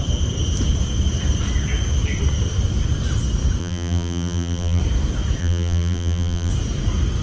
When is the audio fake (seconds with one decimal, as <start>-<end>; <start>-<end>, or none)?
3.6-4.8; 5.4-6.5